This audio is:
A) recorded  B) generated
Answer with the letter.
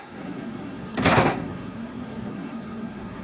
B